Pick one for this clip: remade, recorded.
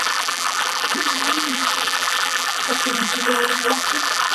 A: remade